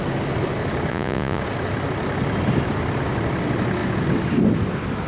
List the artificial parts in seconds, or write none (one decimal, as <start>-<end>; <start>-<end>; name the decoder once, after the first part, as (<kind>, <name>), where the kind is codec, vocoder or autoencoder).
0.9-1.4 (vocoder, Vocos)